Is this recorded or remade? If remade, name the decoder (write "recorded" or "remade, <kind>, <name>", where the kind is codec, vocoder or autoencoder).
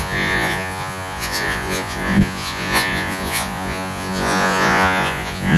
remade, vocoder, Vocos